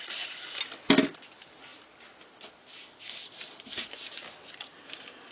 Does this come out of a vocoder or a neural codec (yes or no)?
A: no